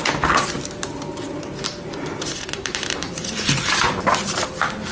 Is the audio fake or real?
fake